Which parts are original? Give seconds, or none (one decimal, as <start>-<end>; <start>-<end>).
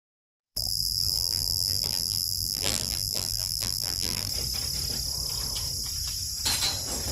4.3-7.1